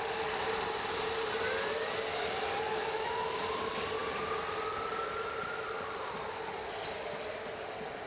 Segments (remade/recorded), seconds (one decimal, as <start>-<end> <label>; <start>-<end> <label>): 0.0-2.8 recorded; 2.8-3.4 remade; 3.4-8.1 recorded